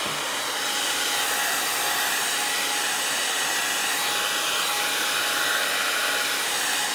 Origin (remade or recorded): recorded